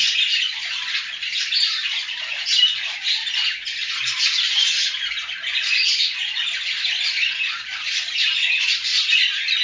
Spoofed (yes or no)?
no